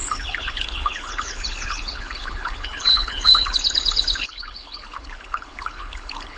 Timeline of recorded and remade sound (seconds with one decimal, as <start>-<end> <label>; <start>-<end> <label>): 0.0-6.4 remade